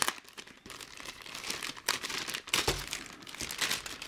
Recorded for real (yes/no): yes